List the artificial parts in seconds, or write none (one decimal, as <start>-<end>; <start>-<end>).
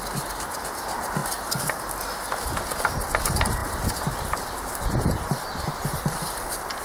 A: none